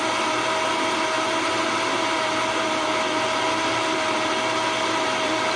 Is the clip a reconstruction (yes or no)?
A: no